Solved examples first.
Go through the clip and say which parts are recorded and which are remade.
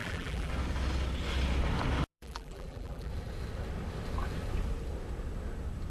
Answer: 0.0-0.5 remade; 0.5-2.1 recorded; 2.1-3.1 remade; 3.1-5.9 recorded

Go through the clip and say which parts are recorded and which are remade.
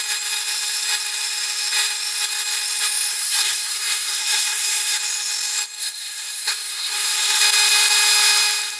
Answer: 0.0-3.1 recorded; 3.1-5.0 remade; 5.0-5.8 recorded; 5.8-7.4 remade; 7.4-8.8 recorded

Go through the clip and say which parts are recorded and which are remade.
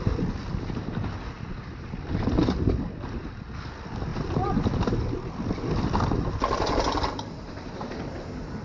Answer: 0.0-8.6 recorded